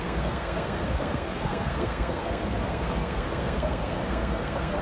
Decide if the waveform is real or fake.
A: fake